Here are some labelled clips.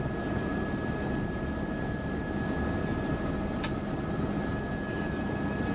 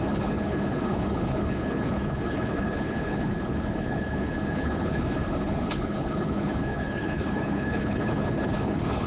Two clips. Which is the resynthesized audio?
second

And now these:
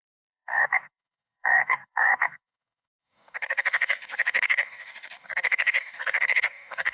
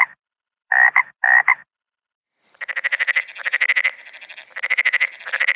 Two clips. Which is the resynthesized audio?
first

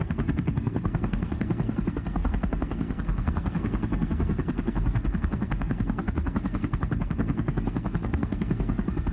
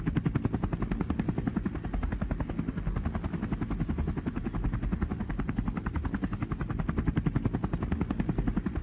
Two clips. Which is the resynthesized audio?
first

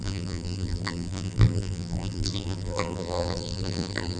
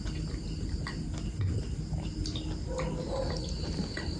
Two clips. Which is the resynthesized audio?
first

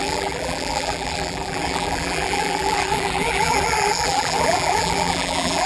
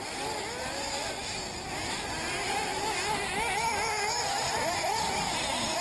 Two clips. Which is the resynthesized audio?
first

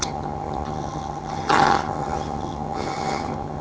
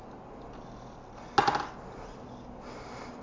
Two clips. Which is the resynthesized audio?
first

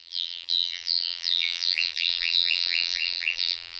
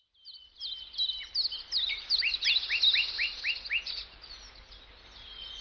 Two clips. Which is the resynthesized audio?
first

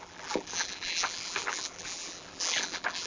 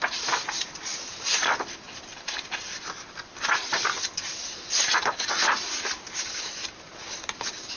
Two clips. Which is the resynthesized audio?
first